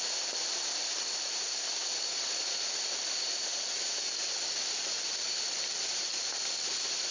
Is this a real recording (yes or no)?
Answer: yes